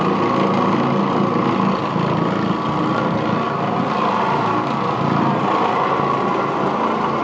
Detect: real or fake real